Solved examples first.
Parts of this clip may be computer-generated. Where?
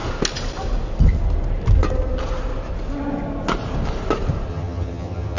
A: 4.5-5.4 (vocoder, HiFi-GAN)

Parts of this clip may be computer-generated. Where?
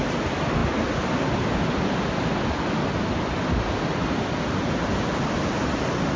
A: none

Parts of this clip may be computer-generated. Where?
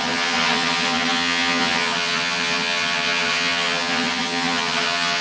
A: 0.0-5.2 (vocoder, HiFi-GAN)